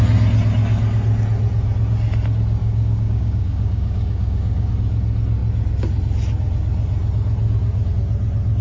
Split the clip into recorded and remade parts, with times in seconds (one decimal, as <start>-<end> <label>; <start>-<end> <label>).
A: 0.0-2.6 recorded; 2.6-4.7 remade; 4.7-8.6 recorded